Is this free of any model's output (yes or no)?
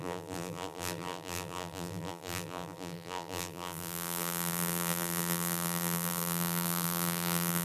no